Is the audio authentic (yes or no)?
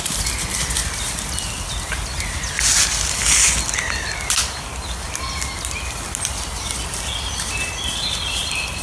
yes